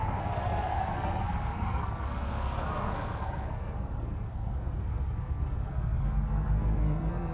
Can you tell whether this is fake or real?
fake